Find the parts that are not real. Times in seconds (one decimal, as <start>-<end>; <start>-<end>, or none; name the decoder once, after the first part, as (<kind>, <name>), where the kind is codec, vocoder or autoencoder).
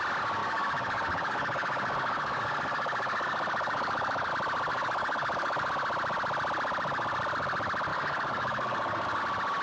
0.4-4.3 (codec, DAC); 4.7-5.7; 7.9-9.2